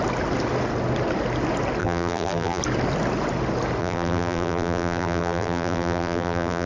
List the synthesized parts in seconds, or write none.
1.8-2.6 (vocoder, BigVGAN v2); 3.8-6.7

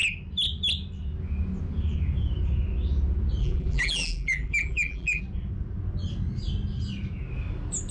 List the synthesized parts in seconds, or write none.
3.4-5.2 (vocoder, BigVGAN v2)

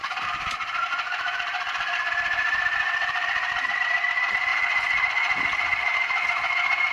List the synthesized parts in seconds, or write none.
0.0-3.7 (vocoder, BigVGAN v2)

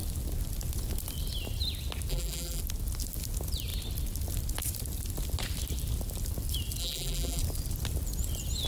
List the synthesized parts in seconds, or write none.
2.1-2.6 (vocoder, BigVGAN v2); 6.8-7.4

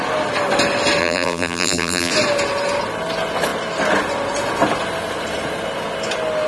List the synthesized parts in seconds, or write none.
1.0-2.1 (vocoder, BigVGAN v2)

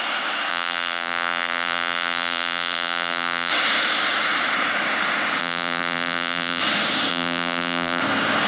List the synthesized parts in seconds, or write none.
0.5-3.5 (vocoder, BigVGAN v2); 5.4-6.6; 7.1-8.0

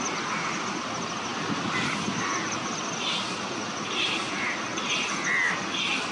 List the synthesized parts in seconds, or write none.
1.3-4.7 (vocoder, BigVGAN v2)